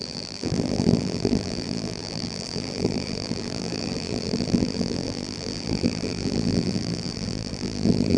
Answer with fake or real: fake